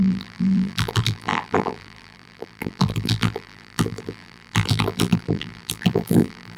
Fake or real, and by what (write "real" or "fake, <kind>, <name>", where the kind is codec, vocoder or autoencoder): fake, vocoder, BigVGAN v2